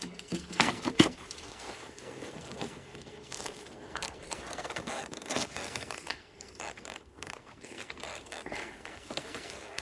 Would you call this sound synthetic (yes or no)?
yes